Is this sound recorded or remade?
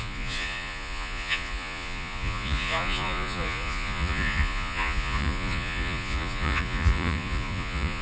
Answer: remade